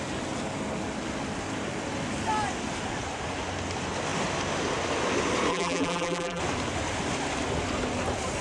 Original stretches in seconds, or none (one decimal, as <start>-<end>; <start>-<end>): 0.0-5.5; 6.4-8.4